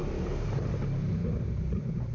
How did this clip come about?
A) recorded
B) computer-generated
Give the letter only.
B